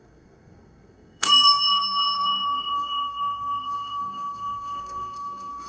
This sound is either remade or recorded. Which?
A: remade